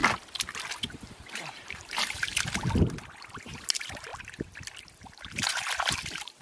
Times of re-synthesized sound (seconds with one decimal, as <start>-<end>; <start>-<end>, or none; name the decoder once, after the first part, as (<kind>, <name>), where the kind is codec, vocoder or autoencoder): 1.3-2.3 (vocoder, BigVGAN v2); 3.5-4.1; 4.8-6.4